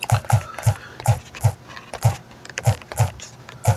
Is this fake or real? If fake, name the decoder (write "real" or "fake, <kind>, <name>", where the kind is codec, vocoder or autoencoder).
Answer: real